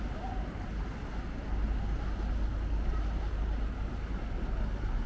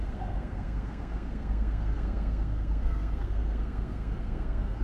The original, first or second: first